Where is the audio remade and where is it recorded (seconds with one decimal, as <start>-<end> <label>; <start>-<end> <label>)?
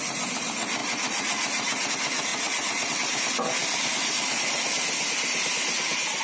0.0-0.8 recorded; 0.8-1.9 remade; 1.9-2.3 recorded; 2.3-2.9 remade; 2.9-6.2 recorded